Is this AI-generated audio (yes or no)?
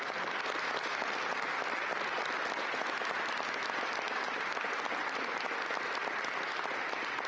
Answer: no